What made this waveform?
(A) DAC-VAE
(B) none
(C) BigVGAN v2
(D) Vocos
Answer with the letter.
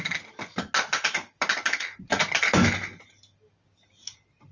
B